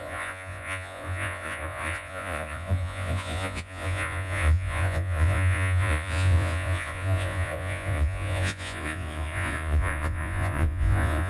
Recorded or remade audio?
remade